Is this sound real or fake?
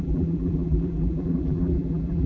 fake